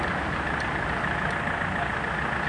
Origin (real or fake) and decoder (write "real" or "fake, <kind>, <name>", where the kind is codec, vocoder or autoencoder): real